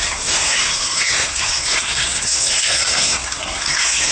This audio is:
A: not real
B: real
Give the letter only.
A